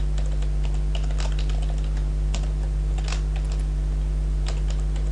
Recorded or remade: recorded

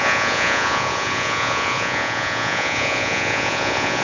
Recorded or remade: remade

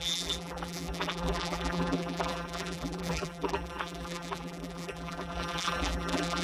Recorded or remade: remade